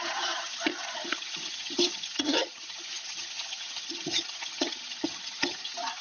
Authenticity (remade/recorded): remade